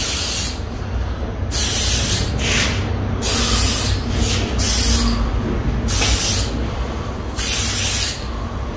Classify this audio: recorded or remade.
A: recorded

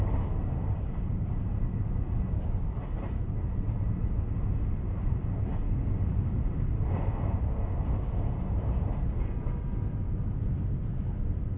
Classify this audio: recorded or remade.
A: recorded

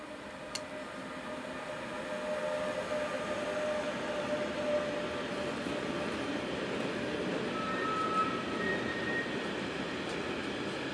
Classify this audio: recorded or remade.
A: recorded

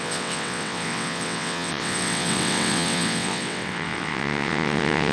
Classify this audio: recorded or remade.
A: remade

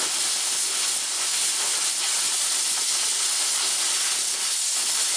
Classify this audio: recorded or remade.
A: recorded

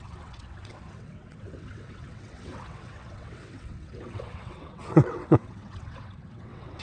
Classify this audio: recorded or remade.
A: remade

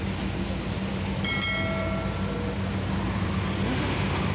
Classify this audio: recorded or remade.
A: recorded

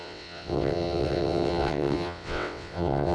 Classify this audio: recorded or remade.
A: remade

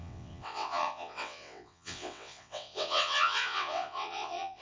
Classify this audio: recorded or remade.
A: remade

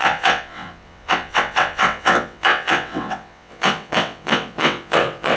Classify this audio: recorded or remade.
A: remade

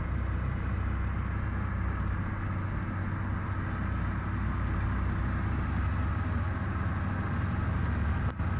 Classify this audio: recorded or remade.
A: recorded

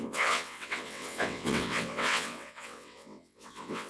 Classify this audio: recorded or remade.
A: remade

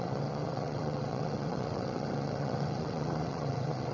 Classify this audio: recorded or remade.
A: remade